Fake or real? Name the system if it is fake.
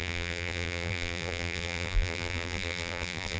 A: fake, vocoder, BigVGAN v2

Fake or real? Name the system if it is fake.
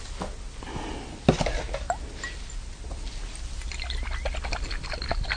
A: real